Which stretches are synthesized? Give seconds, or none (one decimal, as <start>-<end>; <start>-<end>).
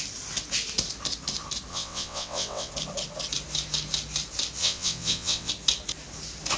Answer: 1.7-2.7; 4.6-5.5